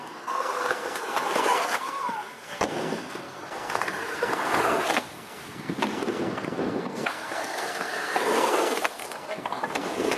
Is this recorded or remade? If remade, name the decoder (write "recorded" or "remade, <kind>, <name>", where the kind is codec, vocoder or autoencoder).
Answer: remade, codec, SNAC